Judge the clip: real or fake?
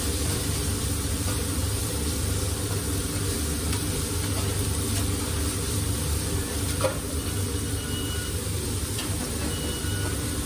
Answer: fake